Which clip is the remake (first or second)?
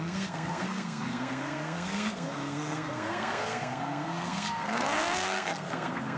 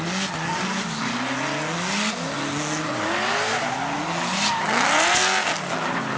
first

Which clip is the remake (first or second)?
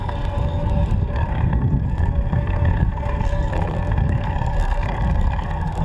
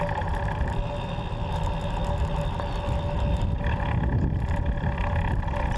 first